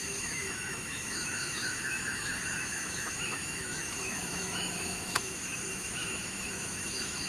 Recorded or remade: remade